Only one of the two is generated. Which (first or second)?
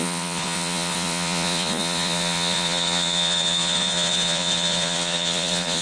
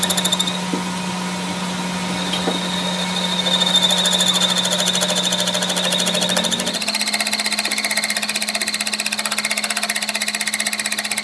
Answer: first